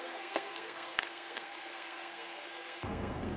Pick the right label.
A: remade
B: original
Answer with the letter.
A